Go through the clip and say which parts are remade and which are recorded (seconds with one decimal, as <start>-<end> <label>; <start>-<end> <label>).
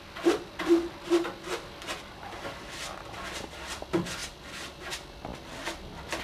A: 0.0-6.2 recorded